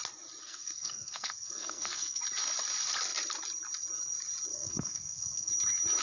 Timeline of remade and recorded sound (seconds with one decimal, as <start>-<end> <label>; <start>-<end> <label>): 0.0-0.4 recorded; 0.4-2.2 remade; 2.2-4.5 recorded; 4.5-5.5 remade; 5.5-6.0 recorded